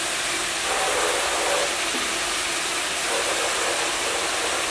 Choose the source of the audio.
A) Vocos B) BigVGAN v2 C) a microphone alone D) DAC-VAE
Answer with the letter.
C